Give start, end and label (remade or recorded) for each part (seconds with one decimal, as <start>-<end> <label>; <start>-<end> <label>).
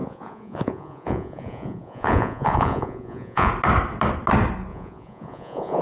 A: 0.0-3.5 remade; 3.5-4.7 recorded; 4.7-5.8 remade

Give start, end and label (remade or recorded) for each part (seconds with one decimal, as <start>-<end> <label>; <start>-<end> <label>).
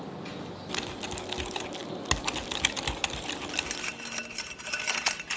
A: 0.0-5.4 recorded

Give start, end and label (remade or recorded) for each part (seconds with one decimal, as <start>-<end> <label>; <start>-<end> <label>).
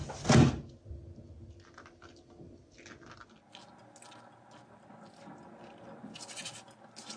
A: 0.0-7.2 recorded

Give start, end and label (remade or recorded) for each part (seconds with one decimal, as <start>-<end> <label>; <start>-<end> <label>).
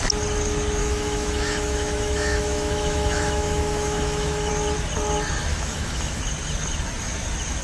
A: 0.0-0.8 recorded; 0.8-4.5 remade; 4.5-5.5 recorded; 5.5-6.2 remade; 6.2-7.6 recorded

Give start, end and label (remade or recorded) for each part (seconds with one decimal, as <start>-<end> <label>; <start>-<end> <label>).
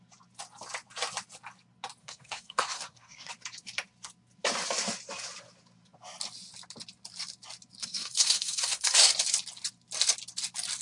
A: 0.0-2.0 recorded; 2.0-3.3 remade; 3.3-7.8 recorded; 7.8-9.1 remade; 9.1-10.8 recorded